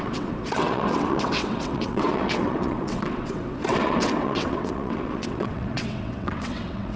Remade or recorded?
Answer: remade